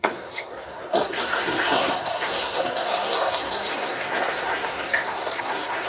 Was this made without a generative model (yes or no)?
no